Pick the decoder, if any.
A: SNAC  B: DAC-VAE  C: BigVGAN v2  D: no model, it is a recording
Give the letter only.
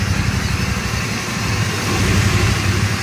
D